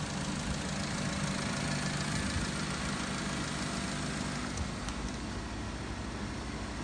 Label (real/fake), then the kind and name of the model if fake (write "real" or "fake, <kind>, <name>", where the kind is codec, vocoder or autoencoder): real